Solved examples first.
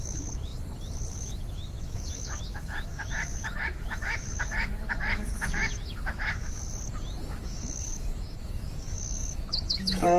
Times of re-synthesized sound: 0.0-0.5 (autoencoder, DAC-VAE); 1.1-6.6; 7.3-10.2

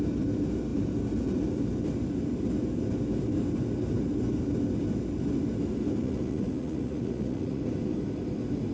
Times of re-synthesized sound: 6.0-7.6 (vocoder, Vocos)

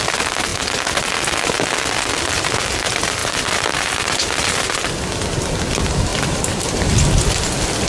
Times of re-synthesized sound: 0.0-0.5 (vocoder, BigVGAN v2); 2.3-7.9

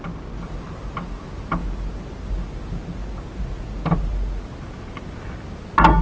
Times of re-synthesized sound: none

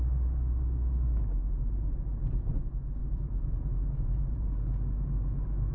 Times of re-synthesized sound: 1.4-2.0 (vocoder, Vocos); 3.0-4.5

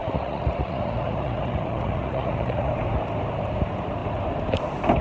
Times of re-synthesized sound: 0.0-2.7 (vocoder, Vocos)